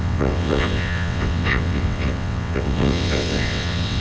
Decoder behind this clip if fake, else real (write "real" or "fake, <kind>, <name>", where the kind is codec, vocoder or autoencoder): fake, vocoder, WaveNeXt